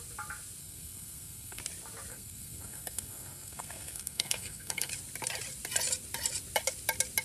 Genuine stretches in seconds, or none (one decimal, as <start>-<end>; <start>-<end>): 0.0-0.6; 1.6-2.1; 4.9-7.2